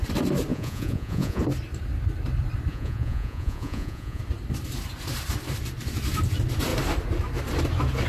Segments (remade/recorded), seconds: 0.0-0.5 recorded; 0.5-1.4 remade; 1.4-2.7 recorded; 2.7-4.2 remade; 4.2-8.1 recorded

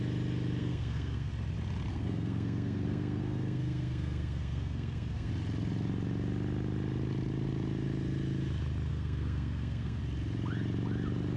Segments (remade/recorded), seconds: 0.0-0.6 recorded; 0.6-1.3 remade; 1.3-1.9 recorded; 1.9-5.3 remade; 5.3-8.9 recorded; 8.9-10.0 remade; 10.0-11.4 recorded

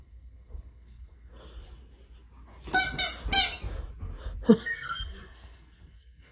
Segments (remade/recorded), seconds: 0.0-1.3 remade; 1.3-4.5 recorded; 4.5-6.3 remade

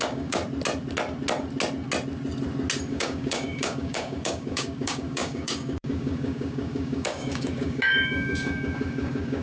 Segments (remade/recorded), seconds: 0.0-0.4 remade; 0.4-2.9 recorded; 2.9-9.4 remade

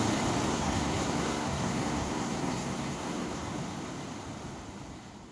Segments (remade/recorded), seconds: 0.0-0.5 recorded; 0.5-3.6 remade; 3.6-5.3 recorded

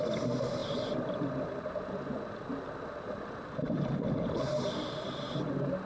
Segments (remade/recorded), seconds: 0.0-5.9 recorded